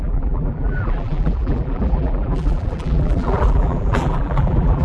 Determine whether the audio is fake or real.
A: fake